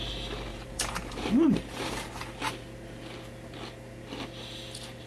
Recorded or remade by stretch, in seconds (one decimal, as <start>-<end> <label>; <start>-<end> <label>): 0.0-0.5 recorded; 0.5-2.1 remade; 2.1-5.1 recorded